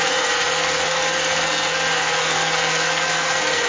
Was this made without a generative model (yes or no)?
no